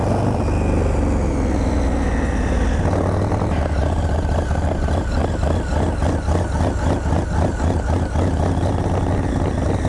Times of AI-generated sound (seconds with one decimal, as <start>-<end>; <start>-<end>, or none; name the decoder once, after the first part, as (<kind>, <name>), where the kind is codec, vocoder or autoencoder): none

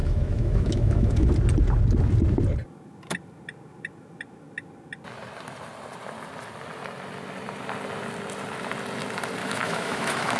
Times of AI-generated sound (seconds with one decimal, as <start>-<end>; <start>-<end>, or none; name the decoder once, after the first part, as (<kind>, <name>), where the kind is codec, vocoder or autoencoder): 0.0-1.3 (autoencoder, DAC-VAE); 9.4-10.4

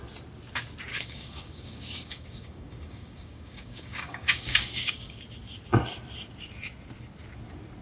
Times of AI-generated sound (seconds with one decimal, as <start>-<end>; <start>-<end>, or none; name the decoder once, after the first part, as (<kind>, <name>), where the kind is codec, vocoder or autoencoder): 0.9-5.2 (codec, DAC)

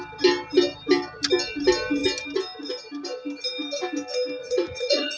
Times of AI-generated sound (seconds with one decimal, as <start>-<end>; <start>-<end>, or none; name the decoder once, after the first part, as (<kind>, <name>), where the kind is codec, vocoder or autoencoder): 4.4-5.2 (vocoder, Vocos)

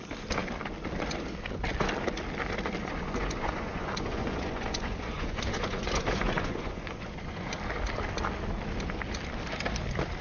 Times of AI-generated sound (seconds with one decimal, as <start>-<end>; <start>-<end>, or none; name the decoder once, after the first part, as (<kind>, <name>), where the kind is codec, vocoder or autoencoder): 2.8-7.5 (vocoder, Vocos)